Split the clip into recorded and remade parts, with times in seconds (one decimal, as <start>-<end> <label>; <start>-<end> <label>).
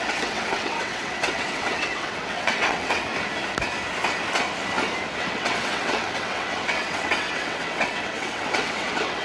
0.0-3.1 remade; 3.1-5.2 recorded; 5.2-9.2 remade